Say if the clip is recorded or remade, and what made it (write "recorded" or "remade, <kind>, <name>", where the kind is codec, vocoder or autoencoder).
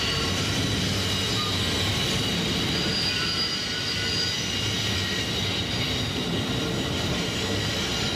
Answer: recorded